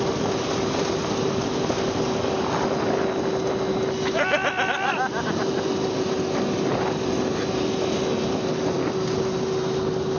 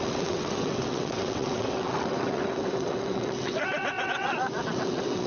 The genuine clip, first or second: first